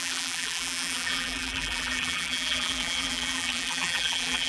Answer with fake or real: fake